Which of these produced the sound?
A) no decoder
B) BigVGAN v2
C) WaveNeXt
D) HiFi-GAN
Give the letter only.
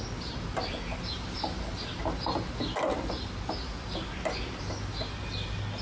A